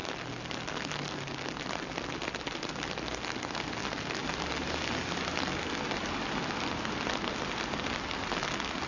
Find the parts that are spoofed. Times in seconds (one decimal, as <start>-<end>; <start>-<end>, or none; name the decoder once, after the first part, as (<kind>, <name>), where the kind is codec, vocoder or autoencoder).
none